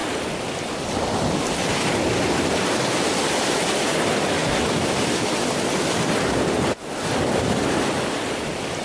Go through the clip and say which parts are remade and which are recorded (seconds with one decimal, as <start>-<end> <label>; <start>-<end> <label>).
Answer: 0.0-8.8 recorded